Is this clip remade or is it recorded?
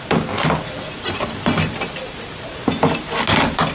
recorded